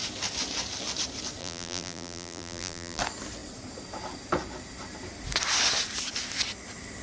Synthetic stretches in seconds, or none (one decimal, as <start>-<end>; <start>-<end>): 1.4-3.0